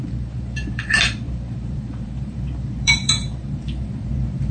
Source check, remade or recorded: remade